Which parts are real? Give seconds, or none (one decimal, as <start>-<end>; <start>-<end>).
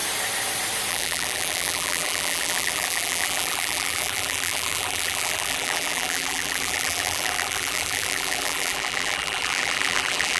0.0-0.9